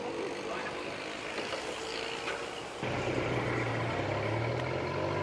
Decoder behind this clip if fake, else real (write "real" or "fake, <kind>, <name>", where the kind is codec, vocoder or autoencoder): real